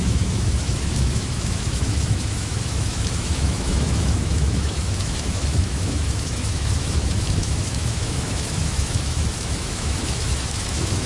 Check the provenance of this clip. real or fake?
fake